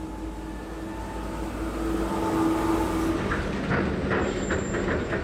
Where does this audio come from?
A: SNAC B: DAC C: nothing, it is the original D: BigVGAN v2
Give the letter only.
C